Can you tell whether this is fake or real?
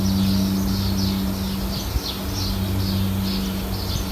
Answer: real